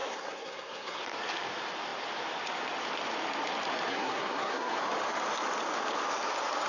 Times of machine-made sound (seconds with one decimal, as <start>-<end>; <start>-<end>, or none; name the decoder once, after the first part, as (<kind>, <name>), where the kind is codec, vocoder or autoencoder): 0.0-1.0 (codec, SNAC); 3.9-4.8